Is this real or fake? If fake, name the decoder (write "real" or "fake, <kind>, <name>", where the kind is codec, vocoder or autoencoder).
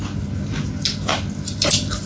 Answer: real